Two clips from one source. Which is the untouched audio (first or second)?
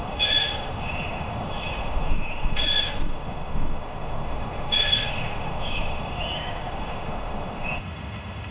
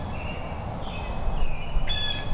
second